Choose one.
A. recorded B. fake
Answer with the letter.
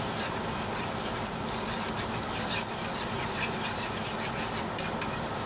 A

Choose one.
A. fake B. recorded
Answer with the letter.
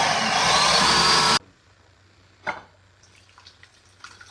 B